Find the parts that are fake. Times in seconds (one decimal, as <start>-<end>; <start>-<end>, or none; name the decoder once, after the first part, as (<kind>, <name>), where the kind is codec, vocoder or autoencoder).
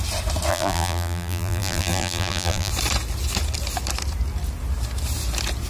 0.5-2.7 (vocoder, BigVGAN v2)